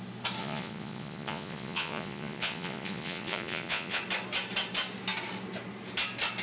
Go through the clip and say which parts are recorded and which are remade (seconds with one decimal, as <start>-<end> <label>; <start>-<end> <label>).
0.0-0.4 recorded; 0.4-4.0 remade; 4.0-6.4 recorded